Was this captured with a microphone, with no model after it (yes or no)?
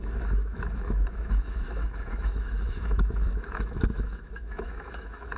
no